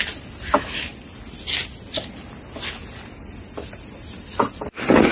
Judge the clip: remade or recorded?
recorded